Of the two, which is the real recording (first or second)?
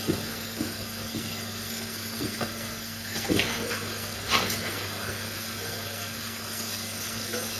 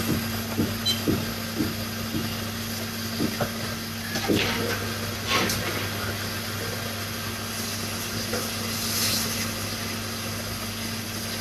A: second